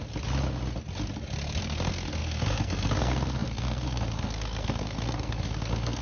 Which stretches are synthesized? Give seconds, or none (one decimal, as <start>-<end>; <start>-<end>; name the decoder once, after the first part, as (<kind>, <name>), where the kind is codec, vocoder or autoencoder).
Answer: 1.6-6.0 (codec, SNAC)